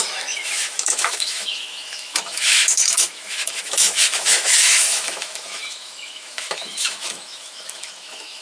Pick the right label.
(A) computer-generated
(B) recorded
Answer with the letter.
A